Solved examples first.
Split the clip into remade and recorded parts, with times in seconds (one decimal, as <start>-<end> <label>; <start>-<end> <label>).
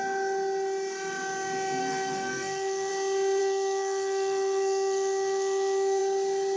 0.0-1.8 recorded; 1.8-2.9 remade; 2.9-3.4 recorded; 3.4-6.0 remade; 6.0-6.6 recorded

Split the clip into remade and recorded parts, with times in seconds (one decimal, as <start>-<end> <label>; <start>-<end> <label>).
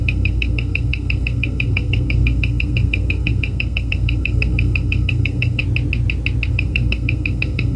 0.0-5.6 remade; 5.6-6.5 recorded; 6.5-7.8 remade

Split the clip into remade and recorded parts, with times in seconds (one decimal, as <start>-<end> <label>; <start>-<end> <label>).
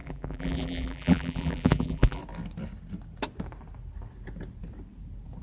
0.0-2.2 remade; 2.2-5.4 recorded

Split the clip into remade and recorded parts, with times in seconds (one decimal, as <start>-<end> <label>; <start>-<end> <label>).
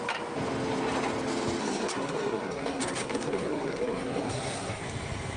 0.0-1.6 recorded; 1.6-4.8 remade; 4.8-5.4 recorded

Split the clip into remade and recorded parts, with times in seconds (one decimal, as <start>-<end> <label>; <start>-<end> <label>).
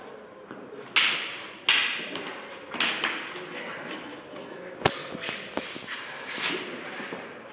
0.0-7.5 recorded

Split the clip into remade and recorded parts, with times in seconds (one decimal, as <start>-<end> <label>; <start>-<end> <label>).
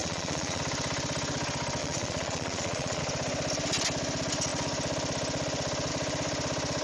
0.0-0.6 remade; 0.6-1.8 recorded; 1.8-3.0 remade; 3.0-6.8 recorded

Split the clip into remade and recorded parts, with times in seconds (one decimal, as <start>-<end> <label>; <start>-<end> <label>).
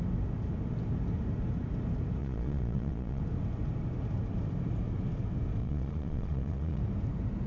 0.0-2.2 recorded; 2.2-3.2 remade; 3.2-5.6 recorded; 5.6-6.8 remade; 6.8-7.5 recorded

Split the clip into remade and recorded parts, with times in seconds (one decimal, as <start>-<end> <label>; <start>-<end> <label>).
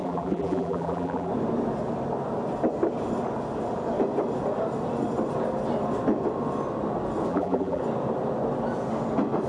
0.0-1.3 remade; 1.3-7.3 recorded; 7.3-7.8 remade; 7.8-9.5 recorded